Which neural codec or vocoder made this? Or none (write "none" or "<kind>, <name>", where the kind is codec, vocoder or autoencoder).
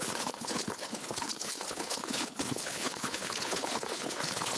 codec, HILCodec